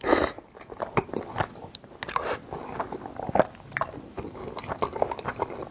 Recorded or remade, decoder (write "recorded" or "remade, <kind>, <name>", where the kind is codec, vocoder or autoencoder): recorded